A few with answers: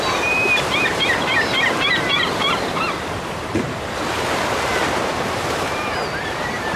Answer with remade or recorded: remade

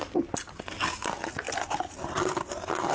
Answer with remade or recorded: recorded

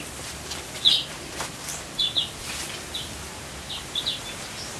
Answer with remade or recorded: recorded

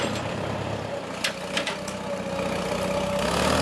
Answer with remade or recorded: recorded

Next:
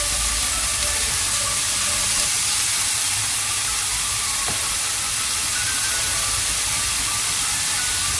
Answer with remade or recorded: recorded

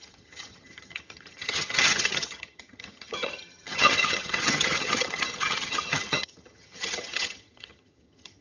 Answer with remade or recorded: remade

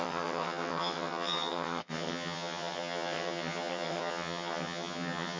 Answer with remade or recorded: remade